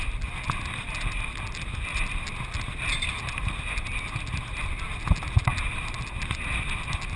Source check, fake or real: real